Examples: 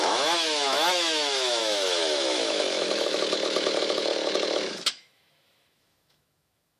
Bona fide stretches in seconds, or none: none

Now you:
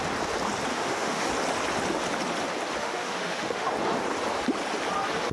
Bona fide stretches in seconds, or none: 0.0-0.7; 1.3-2.8; 3.7-5.3

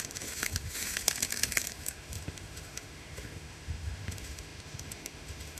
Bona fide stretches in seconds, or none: none